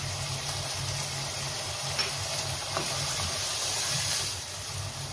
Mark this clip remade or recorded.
recorded